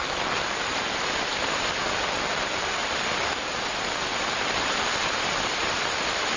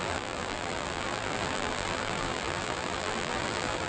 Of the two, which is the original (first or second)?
first